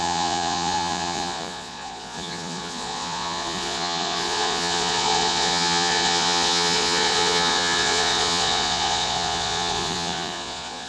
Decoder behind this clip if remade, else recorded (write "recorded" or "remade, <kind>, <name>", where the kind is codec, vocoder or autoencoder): remade, vocoder, Vocos